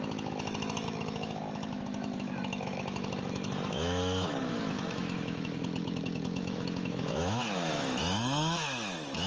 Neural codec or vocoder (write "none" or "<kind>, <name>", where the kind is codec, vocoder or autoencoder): autoencoder, DAC-VAE